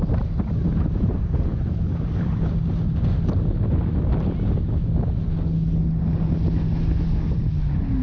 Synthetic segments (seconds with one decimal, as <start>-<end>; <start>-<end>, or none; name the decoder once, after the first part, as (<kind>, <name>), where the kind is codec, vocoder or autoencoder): none